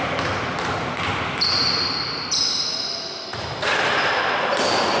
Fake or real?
real